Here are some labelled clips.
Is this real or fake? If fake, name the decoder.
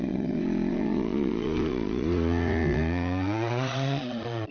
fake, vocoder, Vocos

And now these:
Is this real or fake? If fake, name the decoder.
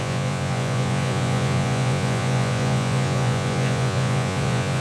fake, vocoder, Vocos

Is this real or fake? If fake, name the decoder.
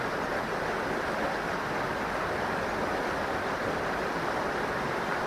real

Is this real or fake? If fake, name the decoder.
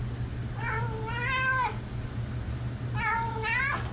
real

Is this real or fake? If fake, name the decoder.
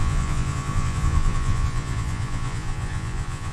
fake, vocoder, Vocos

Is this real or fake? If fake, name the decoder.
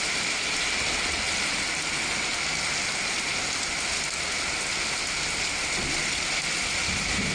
real